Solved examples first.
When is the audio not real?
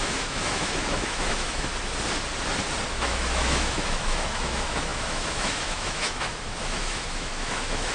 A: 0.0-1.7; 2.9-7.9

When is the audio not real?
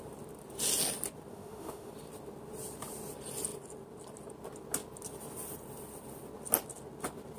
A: 1.3-1.9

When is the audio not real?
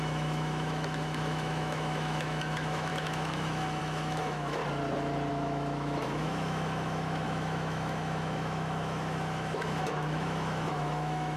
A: 0.0-4.6; 5.3-11.4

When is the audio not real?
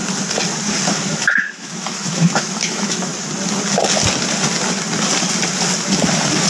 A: 1.1-3.1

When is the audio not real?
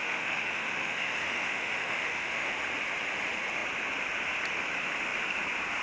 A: 0.0-2.5